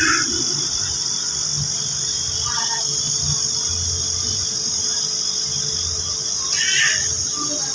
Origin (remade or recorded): recorded